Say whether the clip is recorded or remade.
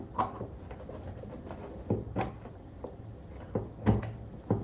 recorded